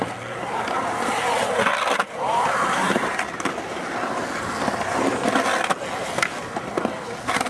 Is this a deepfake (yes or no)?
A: no